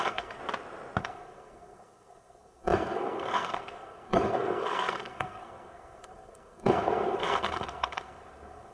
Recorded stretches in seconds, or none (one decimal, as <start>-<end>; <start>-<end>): 0.4-1.0